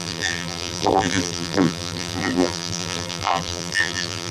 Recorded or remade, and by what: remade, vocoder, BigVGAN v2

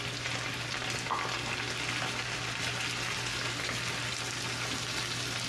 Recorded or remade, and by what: recorded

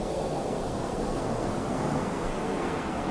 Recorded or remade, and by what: remade, codec, SNAC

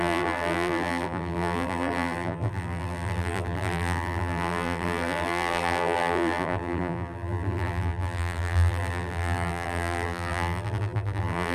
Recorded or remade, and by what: remade, vocoder, BigVGAN v2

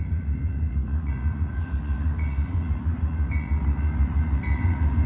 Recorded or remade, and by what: remade, vocoder, Vocos